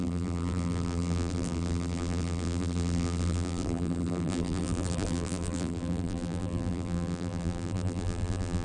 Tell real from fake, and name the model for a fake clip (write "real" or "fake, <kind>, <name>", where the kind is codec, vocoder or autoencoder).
fake, vocoder, BigVGAN v2